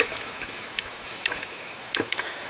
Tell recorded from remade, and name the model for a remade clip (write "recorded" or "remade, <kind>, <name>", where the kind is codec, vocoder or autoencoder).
remade, autoencoder, DAC-VAE